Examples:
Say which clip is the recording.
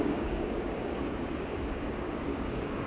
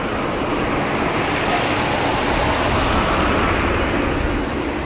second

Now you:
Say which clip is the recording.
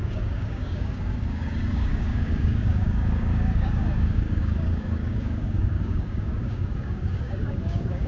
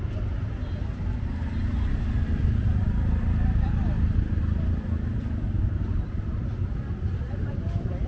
second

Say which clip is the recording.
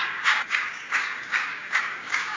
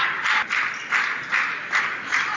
second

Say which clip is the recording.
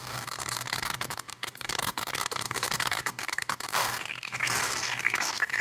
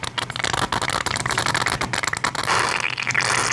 second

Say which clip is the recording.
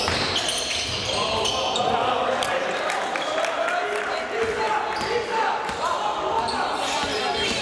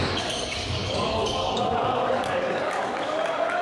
first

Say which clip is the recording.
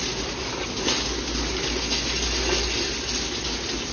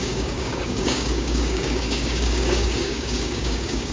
first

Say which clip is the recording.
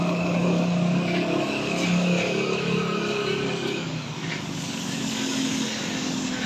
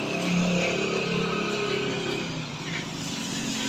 second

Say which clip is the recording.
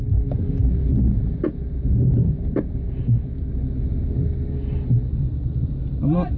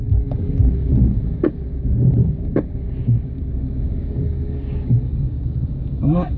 first